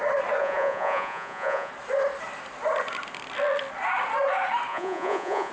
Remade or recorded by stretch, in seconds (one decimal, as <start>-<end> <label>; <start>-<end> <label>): 0.0-0.4 recorded; 0.4-1.7 remade; 1.7-4.7 recorded; 4.7-5.5 remade